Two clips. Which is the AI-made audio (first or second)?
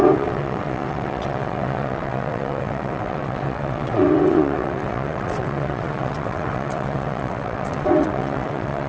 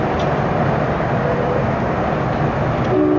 first